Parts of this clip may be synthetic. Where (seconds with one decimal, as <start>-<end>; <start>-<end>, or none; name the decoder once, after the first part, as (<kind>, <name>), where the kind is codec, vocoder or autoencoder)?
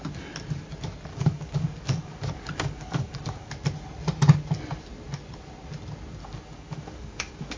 1.1-3.5 (codec, DAC); 6.2-7.6